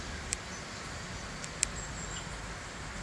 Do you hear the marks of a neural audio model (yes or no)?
no